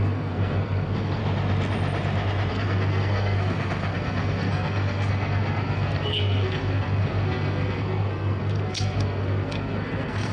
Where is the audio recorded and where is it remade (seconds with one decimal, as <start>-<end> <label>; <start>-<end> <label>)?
0.0-1.2 remade; 1.2-2.5 recorded; 2.5-10.3 remade

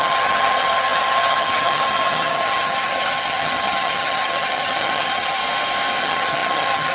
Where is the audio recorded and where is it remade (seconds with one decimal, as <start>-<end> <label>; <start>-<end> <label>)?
0.0-5.4 remade; 5.4-6.0 recorded; 6.0-6.9 remade